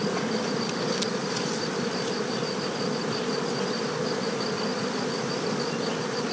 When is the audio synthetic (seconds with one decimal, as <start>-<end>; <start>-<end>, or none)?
none